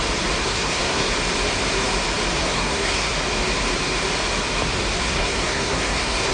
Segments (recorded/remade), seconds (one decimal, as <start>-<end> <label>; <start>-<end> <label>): 0.0-0.4 recorded; 0.4-1.1 remade; 1.1-2.4 recorded; 2.4-3.1 remade; 3.1-5.0 recorded; 5.0-6.3 remade